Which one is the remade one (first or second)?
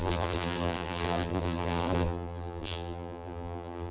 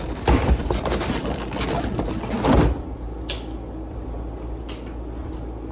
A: first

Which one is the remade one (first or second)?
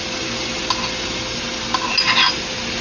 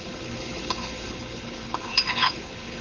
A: second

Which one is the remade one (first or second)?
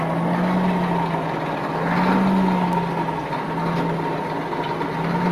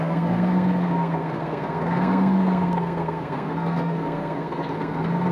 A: second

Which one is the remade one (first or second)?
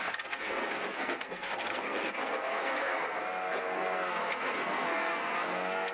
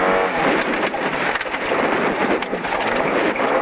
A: first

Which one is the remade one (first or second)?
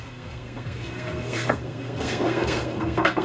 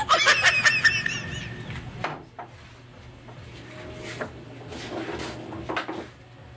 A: first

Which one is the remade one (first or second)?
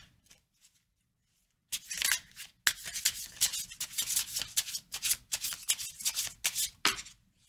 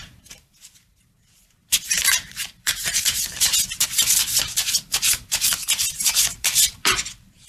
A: second